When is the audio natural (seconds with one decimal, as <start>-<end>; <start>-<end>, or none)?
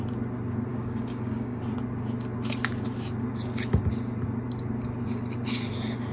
0.0-0.7; 1.6-6.1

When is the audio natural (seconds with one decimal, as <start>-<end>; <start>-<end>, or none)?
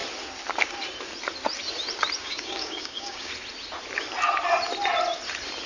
0.0-2.2; 3.3-5.7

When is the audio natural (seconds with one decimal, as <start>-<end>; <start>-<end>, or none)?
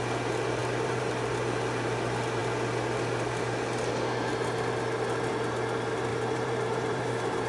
0.0-0.6; 1.1-6.1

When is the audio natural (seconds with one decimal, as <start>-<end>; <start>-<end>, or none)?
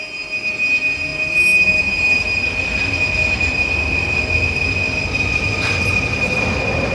0.0-6.9